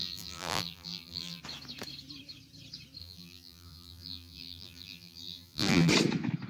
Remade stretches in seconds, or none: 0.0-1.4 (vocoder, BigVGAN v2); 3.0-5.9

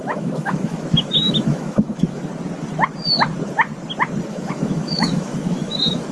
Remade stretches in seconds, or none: 0.0-2.3 (autoencoder, DAC-VAE); 4.3-6.1